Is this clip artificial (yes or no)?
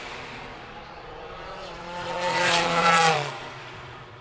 yes